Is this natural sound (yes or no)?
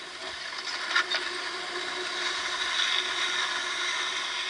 yes